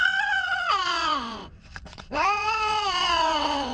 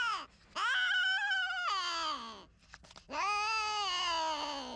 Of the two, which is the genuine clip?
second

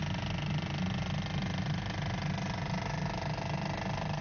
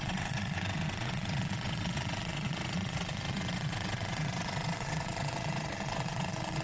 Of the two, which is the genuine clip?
first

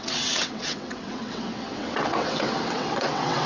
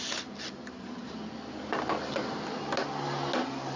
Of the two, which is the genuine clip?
second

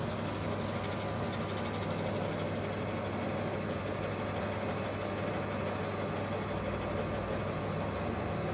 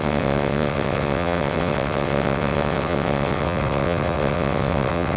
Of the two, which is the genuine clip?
first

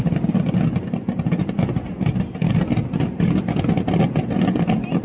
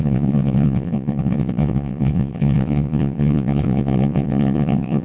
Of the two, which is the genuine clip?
first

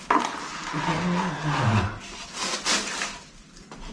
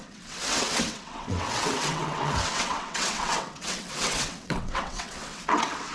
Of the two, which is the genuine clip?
first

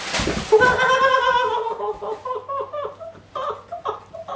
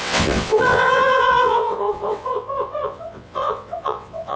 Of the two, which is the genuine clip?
first